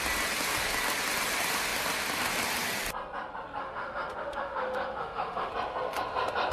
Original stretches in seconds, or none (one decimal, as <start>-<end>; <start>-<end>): 0.0-3.6; 5.5-6.5